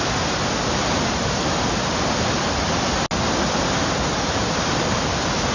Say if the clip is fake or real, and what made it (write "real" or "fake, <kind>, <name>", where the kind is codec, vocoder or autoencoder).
real